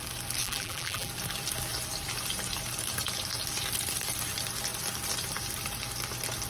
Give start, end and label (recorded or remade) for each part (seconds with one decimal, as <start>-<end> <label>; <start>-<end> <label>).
0.0-0.4 recorded; 0.4-1.1 remade; 1.1-6.5 recorded

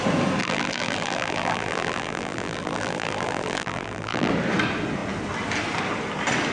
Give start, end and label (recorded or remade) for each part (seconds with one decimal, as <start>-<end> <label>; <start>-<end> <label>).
0.0-0.4 recorded; 0.4-4.3 remade; 4.3-6.5 recorded

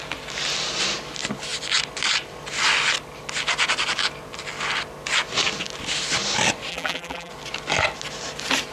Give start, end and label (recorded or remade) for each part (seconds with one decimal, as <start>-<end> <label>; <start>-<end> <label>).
0.0-6.7 recorded; 6.7-7.3 remade; 7.3-8.7 recorded

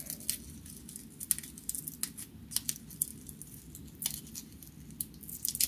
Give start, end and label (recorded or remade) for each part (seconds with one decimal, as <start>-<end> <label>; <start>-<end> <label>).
0.0-5.7 recorded

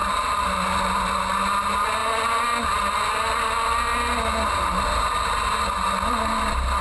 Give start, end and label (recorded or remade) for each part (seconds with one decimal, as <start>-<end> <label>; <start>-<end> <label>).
0.0-6.8 recorded

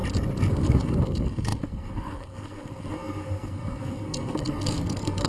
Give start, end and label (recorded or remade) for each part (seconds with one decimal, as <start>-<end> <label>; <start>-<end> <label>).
0.0-0.5 recorded; 0.5-5.3 remade

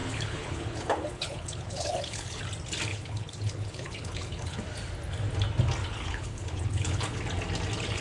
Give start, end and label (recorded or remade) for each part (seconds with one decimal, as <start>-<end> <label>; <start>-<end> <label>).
0.0-2.4 remade; 2.4-2.9 recorded; 2.9-4.6 remade; 4.6-5.8 recorded; 5.8-7.2 remade; 7.2-8.0 recorded